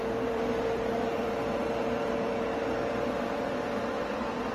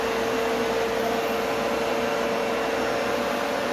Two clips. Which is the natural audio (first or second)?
second